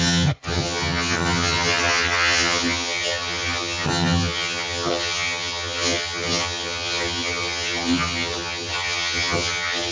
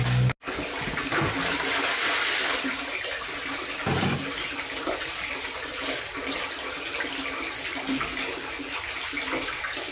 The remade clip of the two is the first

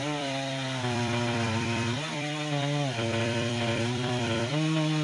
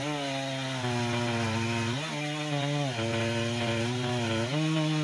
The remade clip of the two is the first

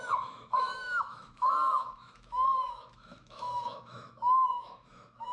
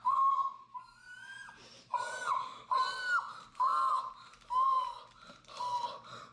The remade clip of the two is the first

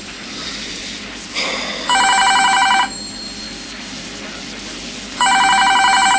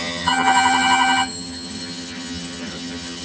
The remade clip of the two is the second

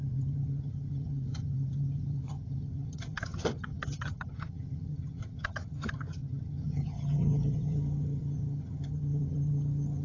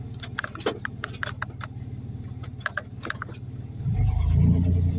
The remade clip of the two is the first